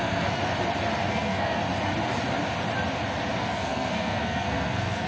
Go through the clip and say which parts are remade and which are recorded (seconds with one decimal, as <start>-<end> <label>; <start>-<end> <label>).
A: 0.0-0.4 remade; 0.4-1.1 recorded; 1.1-1.6 remade; 1.6-3.4 recorded; 3.4-5.1 remade